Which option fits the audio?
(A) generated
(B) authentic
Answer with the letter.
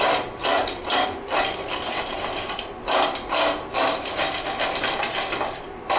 B